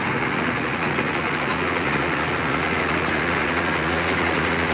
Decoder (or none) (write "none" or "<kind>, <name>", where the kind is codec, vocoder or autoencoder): vocoder, Vocos